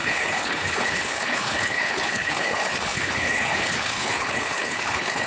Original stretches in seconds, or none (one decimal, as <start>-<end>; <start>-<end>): none